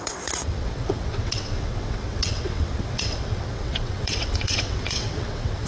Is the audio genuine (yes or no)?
no